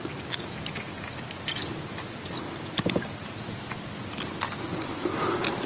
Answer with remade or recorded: recorded